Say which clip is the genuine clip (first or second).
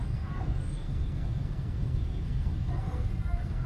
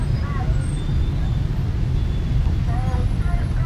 second